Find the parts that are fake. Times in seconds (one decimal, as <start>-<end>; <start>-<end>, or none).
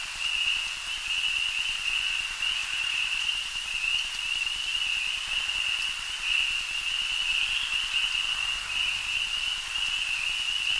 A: 2.6-3.7